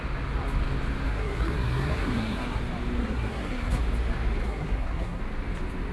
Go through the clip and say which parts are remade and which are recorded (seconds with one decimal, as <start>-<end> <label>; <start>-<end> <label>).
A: 0.0-1.1 recorded; 1.1-2.6 remade; 2.6-3.0 recorded; 3.0-3.8 remade; 3.8-4.4 recorded; 4.4-5.2 remade; 5.2-5.9 recorded